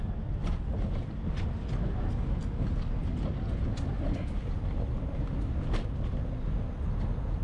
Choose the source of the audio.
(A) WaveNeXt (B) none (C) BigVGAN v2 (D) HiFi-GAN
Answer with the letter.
B